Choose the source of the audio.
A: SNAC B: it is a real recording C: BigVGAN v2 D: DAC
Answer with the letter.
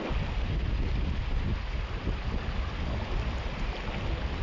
B